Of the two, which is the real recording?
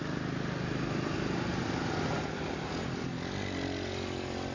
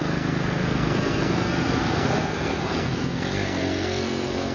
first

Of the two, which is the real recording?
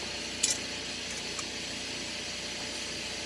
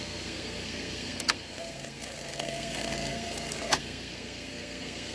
first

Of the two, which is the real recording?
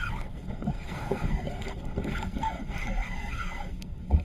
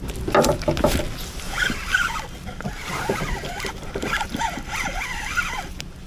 second